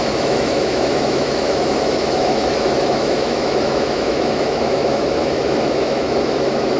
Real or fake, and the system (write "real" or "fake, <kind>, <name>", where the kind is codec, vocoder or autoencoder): fake, autoencoder, DAC-VAE